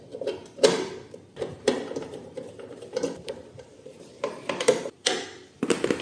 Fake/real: fake